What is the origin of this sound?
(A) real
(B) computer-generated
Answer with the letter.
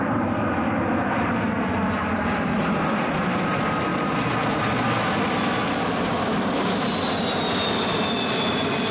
A